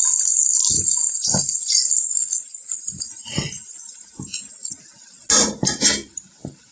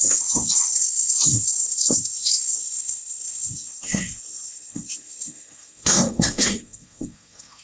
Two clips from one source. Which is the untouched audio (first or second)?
first